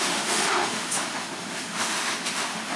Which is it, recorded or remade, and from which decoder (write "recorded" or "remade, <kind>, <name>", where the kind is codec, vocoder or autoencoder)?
remade, autoencoder, DAC-VAE